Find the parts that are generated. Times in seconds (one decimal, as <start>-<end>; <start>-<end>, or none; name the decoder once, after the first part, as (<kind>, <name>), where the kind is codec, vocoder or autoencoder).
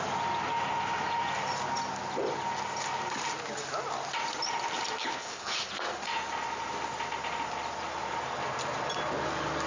5.0-5.7 (codec, HILCodec)